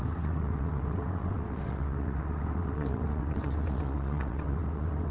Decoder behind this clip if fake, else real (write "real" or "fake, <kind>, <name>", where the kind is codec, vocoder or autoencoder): fake, vocoder, WaveNeXt